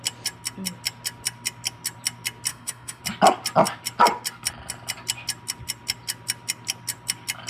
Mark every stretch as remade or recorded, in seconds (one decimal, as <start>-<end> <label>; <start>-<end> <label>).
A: 0.0-2.5 recorded; 2.5-3.0 remade; 3.0-7.5 recorded